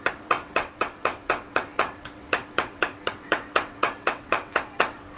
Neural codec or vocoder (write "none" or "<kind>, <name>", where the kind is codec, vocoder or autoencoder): vocoder, WaveNeXt